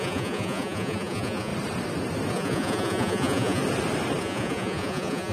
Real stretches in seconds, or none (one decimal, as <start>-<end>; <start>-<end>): 1.5-2.3; 3.6-4.2